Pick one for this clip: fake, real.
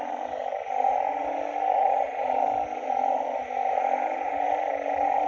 real